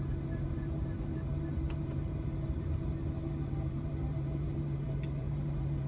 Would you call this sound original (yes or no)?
no